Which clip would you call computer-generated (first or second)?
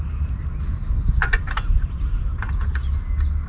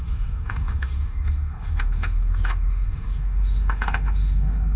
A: second